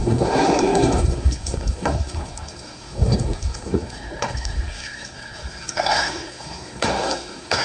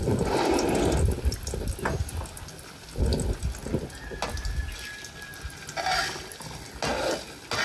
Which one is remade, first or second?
first